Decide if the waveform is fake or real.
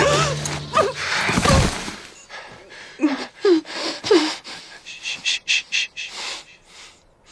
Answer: real